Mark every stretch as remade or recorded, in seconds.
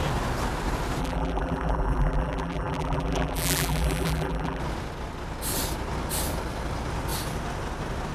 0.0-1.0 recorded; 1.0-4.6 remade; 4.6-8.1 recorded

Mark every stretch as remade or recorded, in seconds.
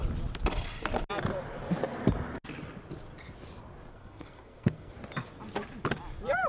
0.0-3.9 recorded; 3.9-4.9 remade; 4.9-6.5 recorded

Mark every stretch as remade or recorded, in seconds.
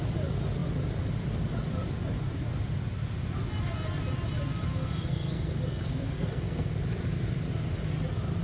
0.0-4.7 recorded; 4.7-6.7 remade; 6.7-8.4 recorded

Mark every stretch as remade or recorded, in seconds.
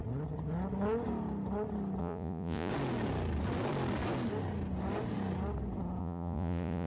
0.0-2.0 recorded; 2.0-2.7 remade; 2.7-6.0 recorded; 6.0-6.9 remade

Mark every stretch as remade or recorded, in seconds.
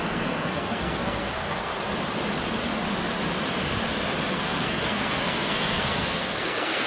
0.0-1.7 remade; 1.7-4.3 recorded; 4.3-6.9 remade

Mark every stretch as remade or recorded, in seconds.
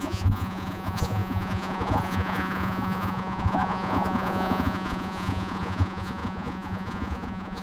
0.0-7.6 remade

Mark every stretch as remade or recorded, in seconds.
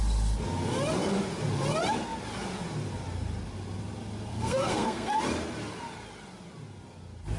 0.0-4.3 recorded; 4.3-5.2 remade; 5.2-7.4 recorded